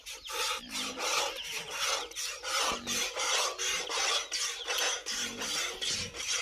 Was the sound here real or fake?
real